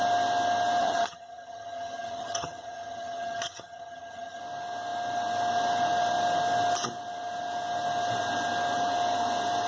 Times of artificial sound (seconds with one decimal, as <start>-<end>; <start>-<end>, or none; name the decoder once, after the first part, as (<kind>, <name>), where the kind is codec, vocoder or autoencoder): 0.8-4.4 (vocoder, HiFi-GAN)